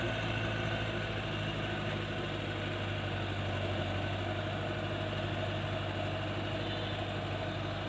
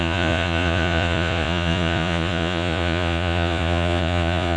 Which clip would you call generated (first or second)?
second